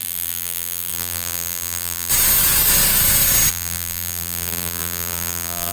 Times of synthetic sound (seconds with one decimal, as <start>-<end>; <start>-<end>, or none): 0.0-2.1; 3.5-5.7